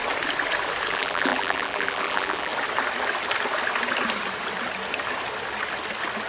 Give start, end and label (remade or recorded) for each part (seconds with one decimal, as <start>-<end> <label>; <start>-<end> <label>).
0.0-0.9 recorded; 0.9-2.5 remade; 2.5-6.3 recorded